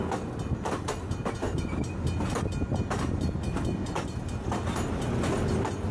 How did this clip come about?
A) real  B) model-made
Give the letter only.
A